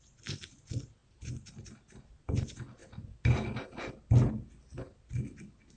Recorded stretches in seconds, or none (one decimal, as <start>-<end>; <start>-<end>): 0.0-5.8